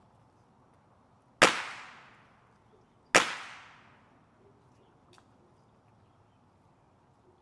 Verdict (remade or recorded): recorded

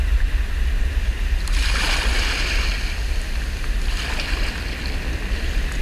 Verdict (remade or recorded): recorded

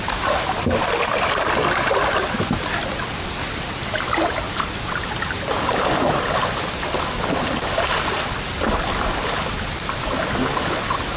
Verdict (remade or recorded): recorded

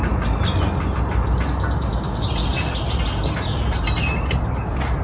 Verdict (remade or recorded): recorded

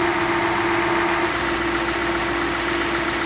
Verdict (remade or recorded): recorded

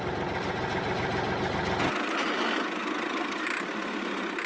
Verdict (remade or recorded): recorded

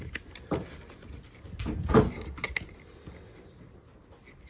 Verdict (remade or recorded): recorded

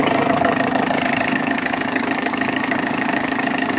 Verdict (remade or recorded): remade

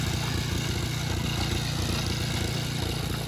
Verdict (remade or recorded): recorded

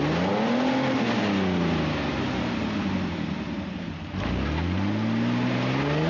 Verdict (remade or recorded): recorded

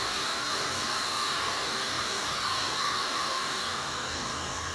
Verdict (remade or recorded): remade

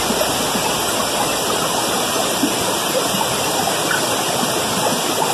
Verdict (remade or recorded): recorded